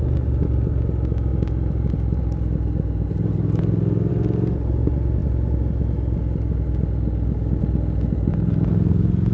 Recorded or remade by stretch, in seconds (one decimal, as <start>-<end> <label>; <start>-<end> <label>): 0.0-9.3 recorded